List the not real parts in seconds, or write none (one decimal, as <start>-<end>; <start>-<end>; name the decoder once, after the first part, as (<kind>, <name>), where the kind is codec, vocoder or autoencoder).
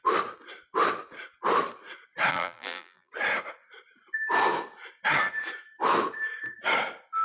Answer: 2.3-3.1 (vocoder, BigVGAN v2)